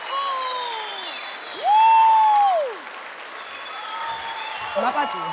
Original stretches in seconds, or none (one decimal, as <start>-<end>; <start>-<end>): 0.0-5.3